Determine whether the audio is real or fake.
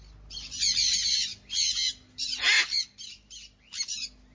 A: real